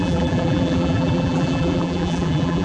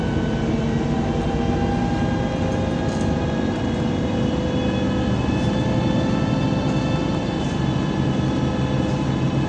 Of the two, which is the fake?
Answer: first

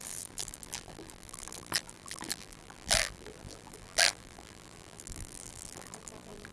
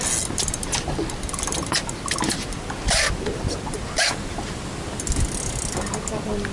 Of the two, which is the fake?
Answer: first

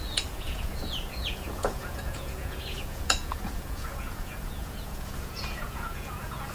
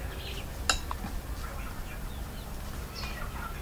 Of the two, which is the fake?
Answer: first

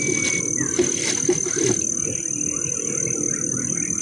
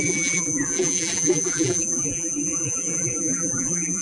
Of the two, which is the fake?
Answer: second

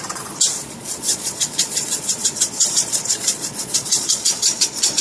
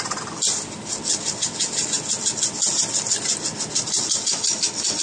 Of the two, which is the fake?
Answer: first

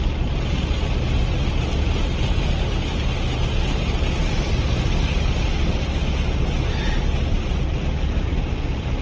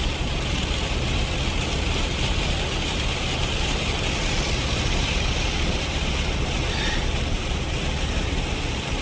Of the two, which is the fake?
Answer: second